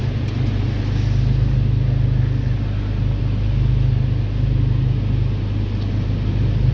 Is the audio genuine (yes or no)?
yes